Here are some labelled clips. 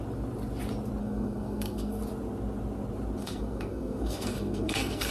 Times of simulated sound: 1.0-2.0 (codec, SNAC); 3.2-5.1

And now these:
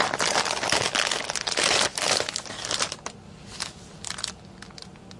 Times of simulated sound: none

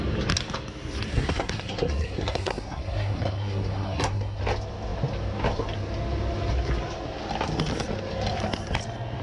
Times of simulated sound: 1.1-4.4 (codec, SNAC)

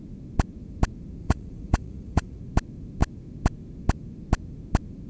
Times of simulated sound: 1.2-2.4 (vocoder, Vocos)

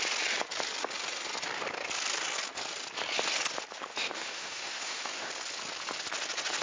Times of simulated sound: 3.9-5.3 (autoencoder, DAC-VAE)

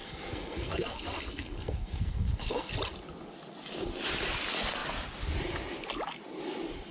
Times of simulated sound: 0.0-2.7 (codec, SNAC)